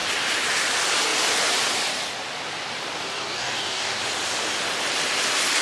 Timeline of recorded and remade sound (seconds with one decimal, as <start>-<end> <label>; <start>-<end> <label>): 0.0-3.1 recorded; 3.1-4.0 remade; 4.0-5.6 recorded